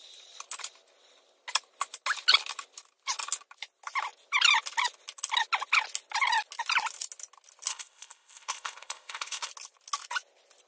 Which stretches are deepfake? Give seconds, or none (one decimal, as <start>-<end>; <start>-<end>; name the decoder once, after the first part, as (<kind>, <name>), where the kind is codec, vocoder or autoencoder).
7.7-9.5 (codec, ZipCodec)